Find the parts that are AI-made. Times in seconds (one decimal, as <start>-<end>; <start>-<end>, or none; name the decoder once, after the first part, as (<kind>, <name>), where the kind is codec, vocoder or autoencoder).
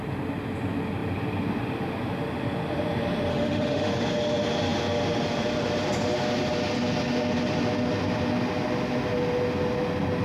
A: 3.3-3.9 (autoencoder, DAC-VAE)